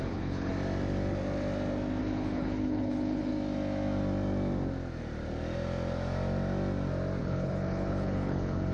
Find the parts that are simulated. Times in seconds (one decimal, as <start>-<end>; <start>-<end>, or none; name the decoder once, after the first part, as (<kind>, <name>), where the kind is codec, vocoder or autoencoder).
0.0-0.5 (codec, HILCodec); 2.0-3.3; 7.2-8.7

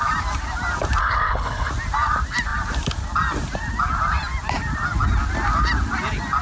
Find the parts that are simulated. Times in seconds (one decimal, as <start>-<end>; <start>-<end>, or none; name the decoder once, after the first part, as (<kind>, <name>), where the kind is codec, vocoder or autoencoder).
1.0-1.7 (codec, HILCodec)

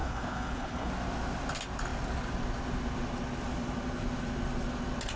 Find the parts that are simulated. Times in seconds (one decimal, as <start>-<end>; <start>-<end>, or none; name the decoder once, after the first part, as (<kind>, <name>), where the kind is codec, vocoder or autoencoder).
0.0-0.9 (codec, HILCodec)

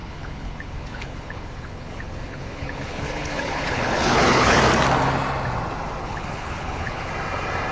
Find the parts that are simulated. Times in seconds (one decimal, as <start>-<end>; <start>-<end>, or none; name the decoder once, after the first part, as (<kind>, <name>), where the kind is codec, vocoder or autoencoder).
0.0-4.6 (codec, HILCodec); 6.0-7.1

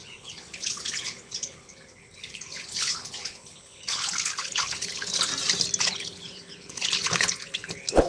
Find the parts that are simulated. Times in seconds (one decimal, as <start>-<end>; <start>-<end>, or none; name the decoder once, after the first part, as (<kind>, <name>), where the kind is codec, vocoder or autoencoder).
0.0-5.3 (codec, HILCodec); 5.8-8.1